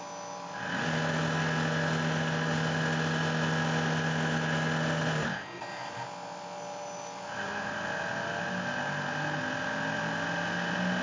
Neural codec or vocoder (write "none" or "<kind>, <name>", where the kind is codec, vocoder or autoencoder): none